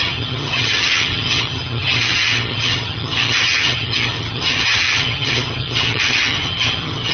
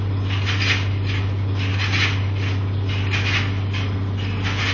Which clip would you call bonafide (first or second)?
second